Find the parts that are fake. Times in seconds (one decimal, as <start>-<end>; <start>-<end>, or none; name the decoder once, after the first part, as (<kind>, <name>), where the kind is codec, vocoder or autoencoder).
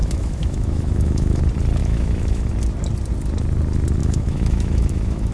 0.0-1.4 (autoencoder, DAC-VAE); 1.8-2.5; 4.0-5.3